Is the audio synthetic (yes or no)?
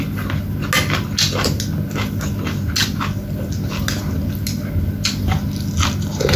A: no